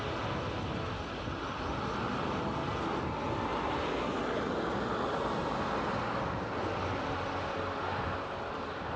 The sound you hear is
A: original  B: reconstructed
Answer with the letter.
A